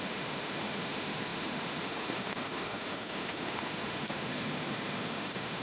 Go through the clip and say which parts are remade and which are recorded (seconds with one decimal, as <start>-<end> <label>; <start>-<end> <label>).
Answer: 0.0-5.6 remade